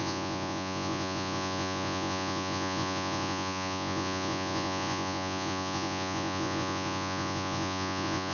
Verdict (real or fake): fake